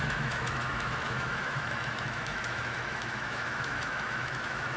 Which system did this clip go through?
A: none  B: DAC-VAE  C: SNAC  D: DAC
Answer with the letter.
B